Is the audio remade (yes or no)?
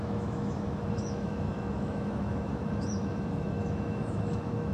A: yes